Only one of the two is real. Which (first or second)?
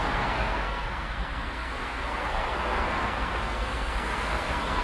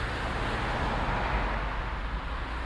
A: second